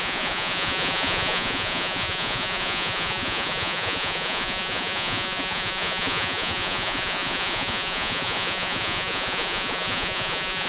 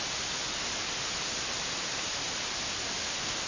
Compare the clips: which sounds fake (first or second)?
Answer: first